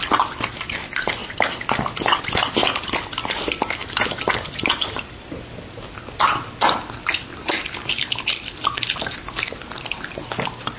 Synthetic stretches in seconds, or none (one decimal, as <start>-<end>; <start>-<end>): 1.2-2.0